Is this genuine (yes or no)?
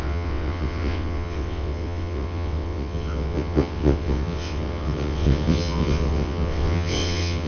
no